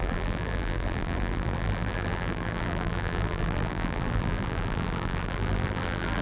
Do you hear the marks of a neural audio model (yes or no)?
yes